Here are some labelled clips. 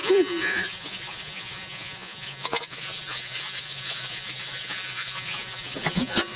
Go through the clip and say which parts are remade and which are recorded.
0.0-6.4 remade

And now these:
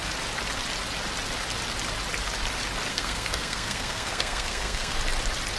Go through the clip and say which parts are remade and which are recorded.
0.0-2.9 recorded; 2.9-5.0 remade; 5.0-5.6 recorded